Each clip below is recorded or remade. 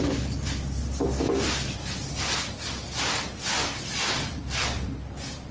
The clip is recorded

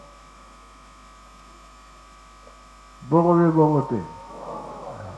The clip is remade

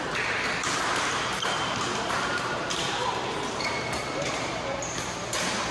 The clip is remade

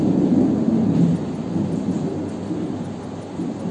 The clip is recorded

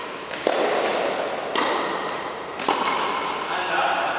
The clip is recorded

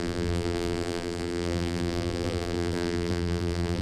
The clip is remade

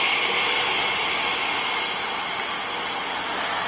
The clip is recorded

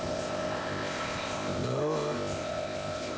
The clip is remade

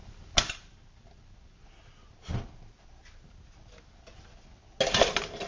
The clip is recorded